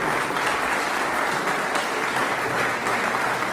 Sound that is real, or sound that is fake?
real